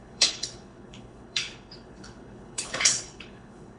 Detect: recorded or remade remade